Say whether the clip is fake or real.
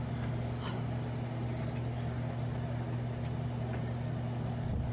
real